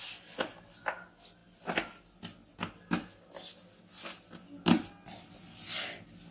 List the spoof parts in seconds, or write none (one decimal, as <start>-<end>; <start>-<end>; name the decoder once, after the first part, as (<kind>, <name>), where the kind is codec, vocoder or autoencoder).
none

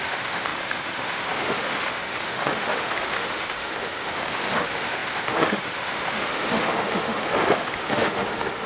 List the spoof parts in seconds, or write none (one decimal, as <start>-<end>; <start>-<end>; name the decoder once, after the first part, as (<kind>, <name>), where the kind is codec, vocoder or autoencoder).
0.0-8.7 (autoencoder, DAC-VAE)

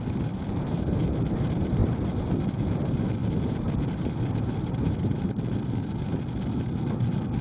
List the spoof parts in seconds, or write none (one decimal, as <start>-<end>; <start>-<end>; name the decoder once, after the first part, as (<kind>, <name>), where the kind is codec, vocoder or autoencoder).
3.2-6.2 (vocoder, BigVGAN v2)

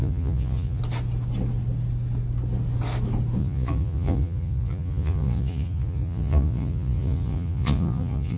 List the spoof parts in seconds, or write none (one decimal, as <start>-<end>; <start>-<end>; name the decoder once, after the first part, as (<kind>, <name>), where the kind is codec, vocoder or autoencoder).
0.0-0.8 (vocoder, Vocos); 3.4-8.4

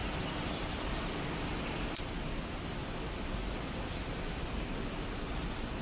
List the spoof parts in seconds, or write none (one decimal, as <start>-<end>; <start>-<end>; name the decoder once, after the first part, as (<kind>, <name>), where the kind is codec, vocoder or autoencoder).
3.5-5.8 (vocoder, BigVGAN v2)